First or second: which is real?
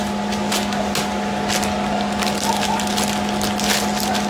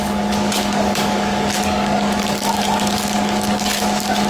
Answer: first